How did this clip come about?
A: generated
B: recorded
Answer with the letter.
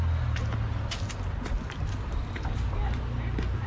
B